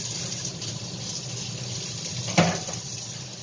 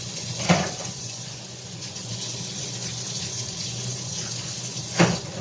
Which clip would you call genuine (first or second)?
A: first